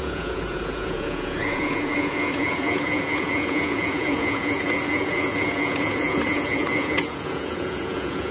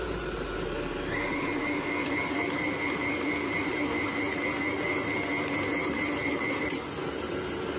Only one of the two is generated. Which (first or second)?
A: first